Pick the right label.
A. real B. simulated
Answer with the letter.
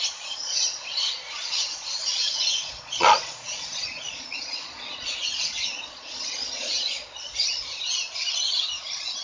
B